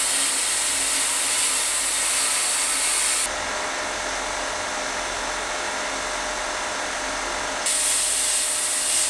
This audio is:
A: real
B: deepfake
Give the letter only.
A